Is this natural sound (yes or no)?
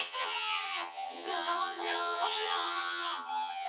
no